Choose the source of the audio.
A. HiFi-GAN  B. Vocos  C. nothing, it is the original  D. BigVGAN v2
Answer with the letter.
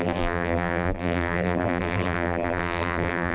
D